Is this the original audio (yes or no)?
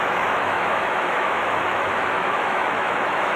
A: no